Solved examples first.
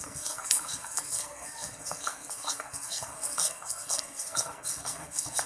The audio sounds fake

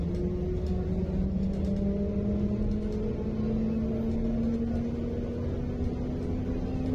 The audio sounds real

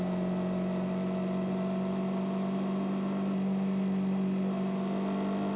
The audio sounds real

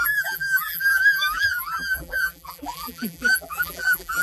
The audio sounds fake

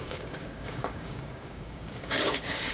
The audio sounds fake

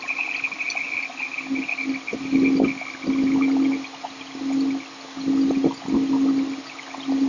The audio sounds real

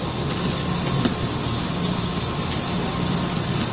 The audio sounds real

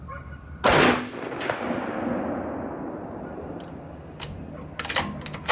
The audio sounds real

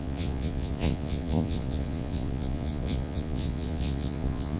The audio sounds fake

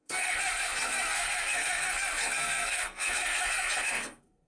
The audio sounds fake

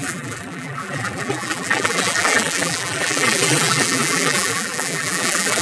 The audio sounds fake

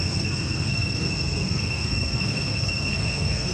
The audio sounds fake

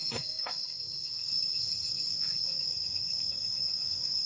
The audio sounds fake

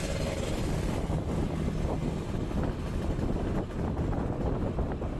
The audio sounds real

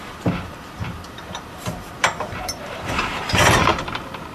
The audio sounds fake